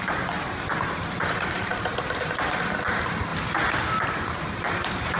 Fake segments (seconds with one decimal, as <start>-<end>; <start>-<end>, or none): 0.0-3.3; 4.0-5.2